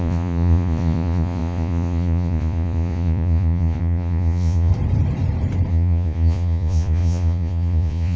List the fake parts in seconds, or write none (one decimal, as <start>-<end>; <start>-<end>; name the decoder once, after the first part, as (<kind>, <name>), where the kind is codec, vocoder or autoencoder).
0.0-4.7 (vocoder, Vocos); 5.7-8.2